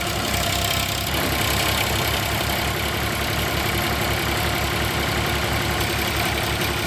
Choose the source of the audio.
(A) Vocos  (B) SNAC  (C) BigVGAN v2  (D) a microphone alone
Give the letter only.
D